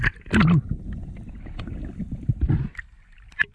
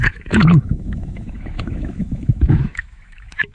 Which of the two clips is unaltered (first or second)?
first